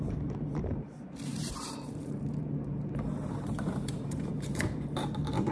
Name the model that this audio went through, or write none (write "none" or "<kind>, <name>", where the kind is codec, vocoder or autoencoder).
vocoder, BigVGAN v2